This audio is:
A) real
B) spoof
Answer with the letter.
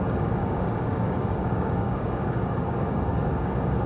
B